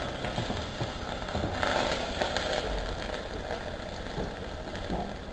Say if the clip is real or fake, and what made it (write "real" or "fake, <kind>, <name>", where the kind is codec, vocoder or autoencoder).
real